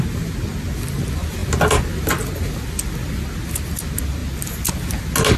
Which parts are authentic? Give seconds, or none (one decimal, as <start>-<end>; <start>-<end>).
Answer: 0.0-5.4